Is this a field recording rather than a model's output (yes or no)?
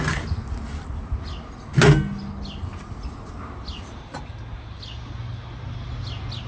yes